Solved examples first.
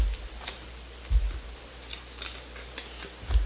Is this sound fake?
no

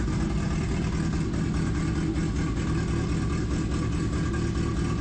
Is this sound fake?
no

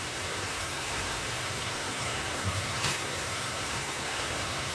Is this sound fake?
yes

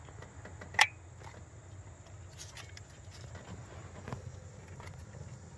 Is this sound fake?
no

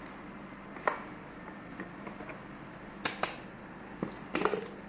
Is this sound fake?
no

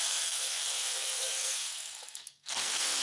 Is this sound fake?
yes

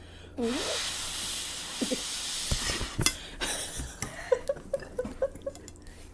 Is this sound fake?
no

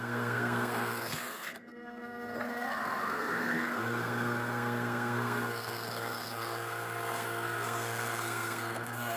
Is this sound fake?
yes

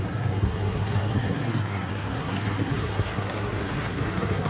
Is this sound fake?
yes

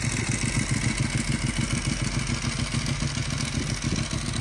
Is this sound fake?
no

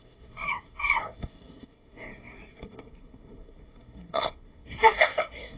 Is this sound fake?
yes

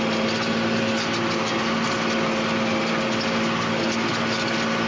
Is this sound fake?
no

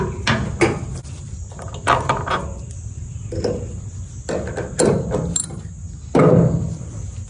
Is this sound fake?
no